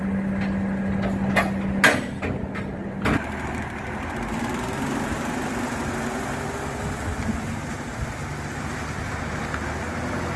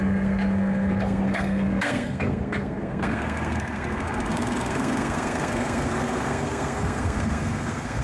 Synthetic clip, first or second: second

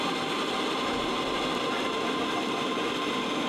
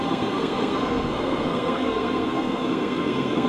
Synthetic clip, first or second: second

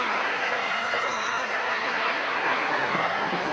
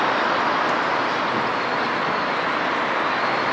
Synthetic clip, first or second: first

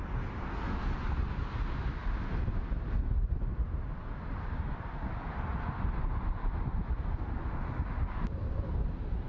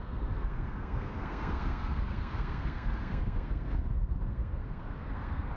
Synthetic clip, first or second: second